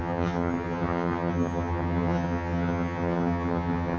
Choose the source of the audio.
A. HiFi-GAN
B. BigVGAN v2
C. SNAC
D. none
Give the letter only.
A